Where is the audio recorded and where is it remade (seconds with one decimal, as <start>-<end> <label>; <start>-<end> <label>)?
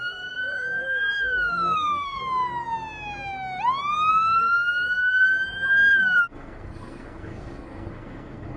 0.0-2.2 remade; 2.2-4.1 recorded; 4.1-5.3 remade; 5.3-5.9 recorded; 5.9-8.6 remade